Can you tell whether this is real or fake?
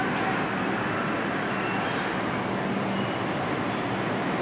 real